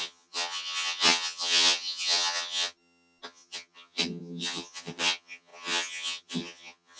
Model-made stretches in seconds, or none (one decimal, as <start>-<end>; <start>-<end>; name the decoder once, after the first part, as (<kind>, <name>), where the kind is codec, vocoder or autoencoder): 0.0-7.0 (vocoder, HiFi-GAN)